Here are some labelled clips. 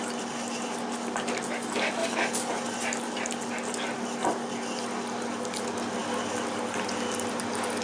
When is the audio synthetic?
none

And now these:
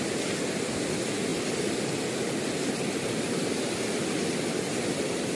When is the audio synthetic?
none